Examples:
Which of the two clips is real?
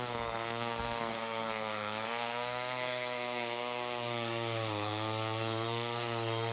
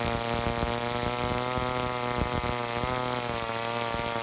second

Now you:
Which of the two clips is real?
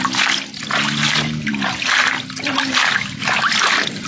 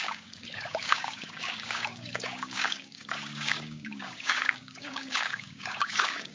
first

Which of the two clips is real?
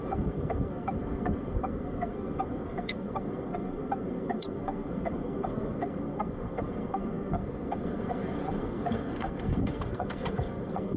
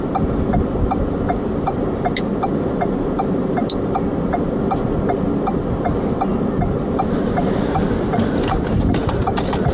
second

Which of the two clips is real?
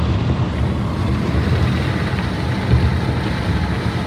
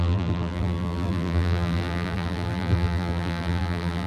first